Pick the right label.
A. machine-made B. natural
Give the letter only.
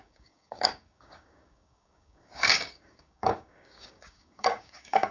A